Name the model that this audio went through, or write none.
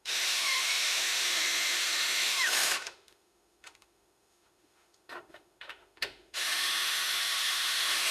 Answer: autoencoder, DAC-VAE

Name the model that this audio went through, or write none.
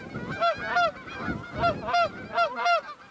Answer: none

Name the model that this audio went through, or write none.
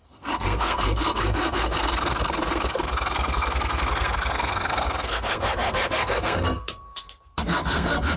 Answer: codec, SNAC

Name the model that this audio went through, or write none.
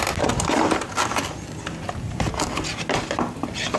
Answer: none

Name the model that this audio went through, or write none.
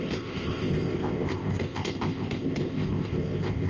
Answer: codec, ZipCodec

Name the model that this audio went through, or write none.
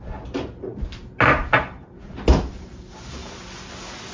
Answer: none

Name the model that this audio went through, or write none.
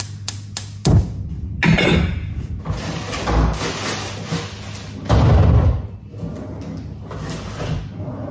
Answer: none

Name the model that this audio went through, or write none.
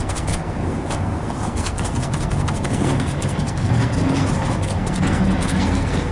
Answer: codec, SNAC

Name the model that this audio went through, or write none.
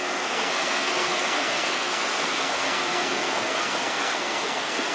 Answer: codec, SNAC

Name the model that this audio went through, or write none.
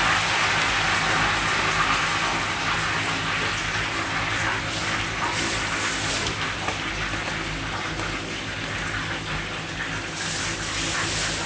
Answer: none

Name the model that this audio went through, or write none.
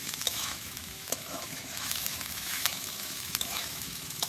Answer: autoencoder, DAC-VAE